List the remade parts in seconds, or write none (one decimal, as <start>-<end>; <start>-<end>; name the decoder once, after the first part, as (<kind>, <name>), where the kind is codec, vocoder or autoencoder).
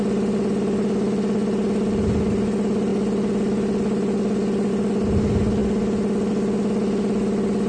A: none